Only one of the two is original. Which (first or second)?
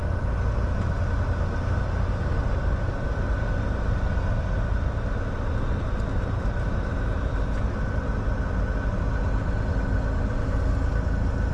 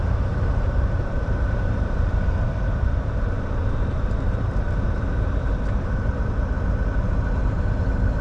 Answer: first